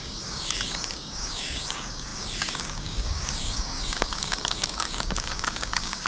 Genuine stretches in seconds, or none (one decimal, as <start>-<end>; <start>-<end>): none